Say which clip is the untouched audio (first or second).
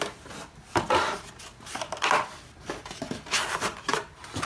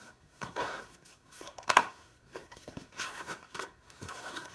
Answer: first